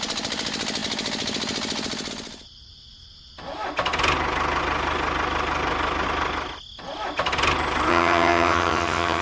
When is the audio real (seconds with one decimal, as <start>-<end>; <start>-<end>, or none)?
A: 0.0-7.9